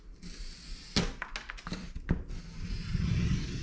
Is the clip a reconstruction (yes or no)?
no